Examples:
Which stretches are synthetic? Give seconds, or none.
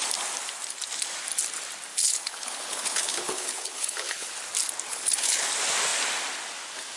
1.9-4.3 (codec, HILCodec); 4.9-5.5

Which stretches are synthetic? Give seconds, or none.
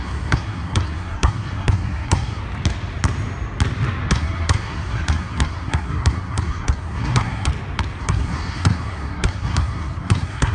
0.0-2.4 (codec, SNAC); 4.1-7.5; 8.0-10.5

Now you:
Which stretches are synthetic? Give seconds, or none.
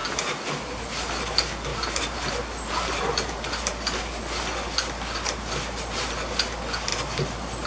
0.0-1.2 (vocoder, BigVGAN v2); 1.7-4.0; 6.9-7.7